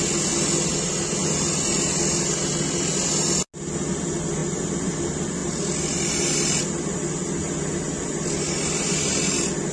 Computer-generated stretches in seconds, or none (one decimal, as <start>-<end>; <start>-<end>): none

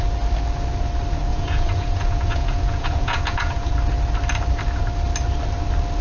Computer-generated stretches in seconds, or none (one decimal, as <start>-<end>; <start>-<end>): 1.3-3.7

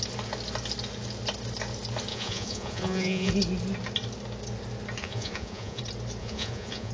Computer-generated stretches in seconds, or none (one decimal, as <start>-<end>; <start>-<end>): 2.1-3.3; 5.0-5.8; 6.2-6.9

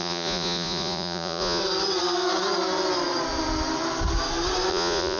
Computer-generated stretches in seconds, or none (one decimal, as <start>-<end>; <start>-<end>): 0.0-1.6; 4.7-5.2